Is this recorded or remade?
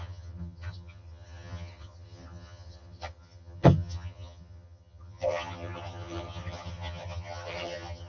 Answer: remade